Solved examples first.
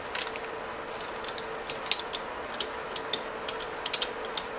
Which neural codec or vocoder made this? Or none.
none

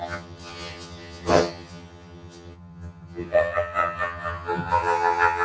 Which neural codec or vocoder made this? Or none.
vocoder, HiFi-GAN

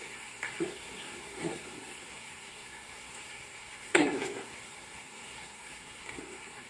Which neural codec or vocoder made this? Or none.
codec, SNAC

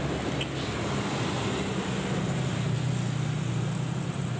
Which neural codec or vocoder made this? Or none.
none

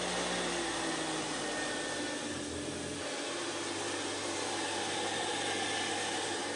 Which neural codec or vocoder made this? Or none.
none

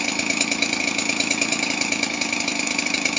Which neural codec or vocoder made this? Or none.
autoencoder, DAC-VAE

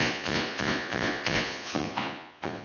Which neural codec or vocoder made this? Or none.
vocoder, Vocos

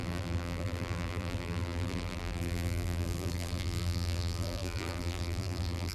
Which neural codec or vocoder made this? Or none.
vocoder, BigVGAN v2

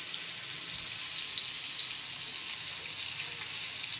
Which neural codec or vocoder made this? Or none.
none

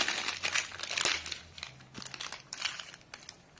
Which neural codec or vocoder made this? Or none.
none